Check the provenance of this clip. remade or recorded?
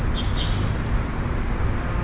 recorded